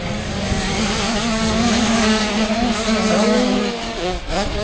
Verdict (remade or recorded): remade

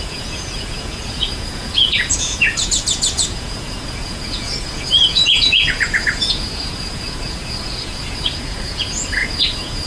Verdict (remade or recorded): remade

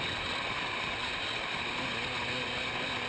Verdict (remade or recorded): recorded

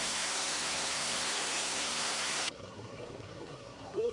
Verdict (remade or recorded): remade